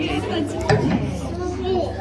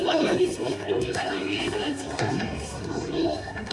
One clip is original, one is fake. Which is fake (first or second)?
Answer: second